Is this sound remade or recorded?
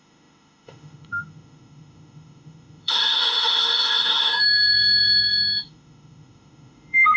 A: remade